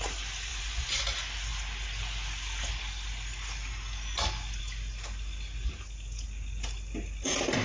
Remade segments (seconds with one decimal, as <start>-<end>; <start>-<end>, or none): 0.5-1.0